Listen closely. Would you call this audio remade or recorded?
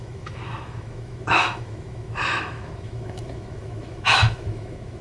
remade